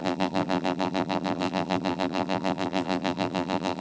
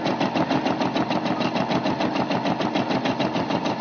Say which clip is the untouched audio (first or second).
second